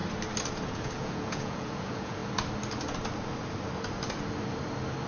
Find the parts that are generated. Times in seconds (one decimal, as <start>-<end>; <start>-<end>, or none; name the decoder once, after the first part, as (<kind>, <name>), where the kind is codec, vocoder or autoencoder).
0.7-2.2 (vocoder, Vocos)